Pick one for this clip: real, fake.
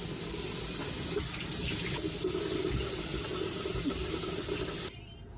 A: real